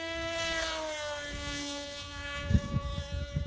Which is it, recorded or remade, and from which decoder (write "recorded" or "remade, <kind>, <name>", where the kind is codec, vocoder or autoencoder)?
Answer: remade, codec, SNAC